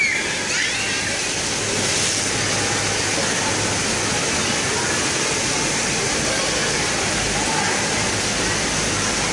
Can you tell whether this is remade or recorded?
recorded